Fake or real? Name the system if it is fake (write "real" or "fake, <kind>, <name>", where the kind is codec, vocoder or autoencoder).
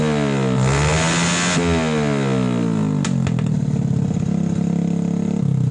real